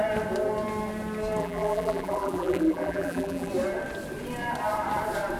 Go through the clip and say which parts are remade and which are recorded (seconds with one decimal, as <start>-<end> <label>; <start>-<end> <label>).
0.0-1.4 recorded; 1.4-3.5 remade; 3.5-5.4 recorded